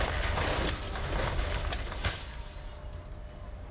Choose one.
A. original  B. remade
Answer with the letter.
A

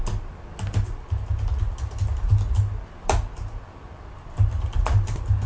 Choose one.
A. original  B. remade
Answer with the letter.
A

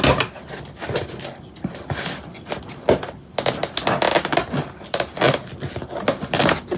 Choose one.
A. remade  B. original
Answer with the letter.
B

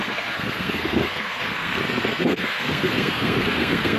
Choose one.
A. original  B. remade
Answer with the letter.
B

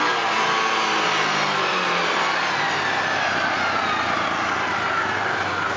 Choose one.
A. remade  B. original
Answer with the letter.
B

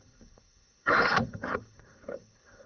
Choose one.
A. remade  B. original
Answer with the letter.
A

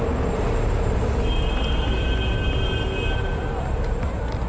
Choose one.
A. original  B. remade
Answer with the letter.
A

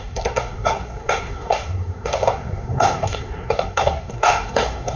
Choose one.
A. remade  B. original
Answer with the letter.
A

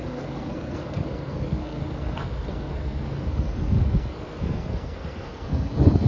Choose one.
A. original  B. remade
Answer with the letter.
B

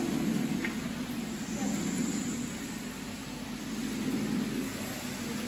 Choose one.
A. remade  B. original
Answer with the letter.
B